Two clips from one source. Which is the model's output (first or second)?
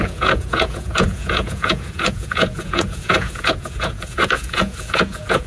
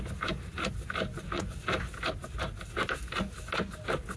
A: first